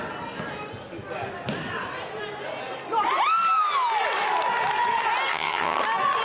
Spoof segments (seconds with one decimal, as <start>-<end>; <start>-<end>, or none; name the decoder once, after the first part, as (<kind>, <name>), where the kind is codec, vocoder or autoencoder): 5.3-5.8 (vocoder, HiFi-GAN)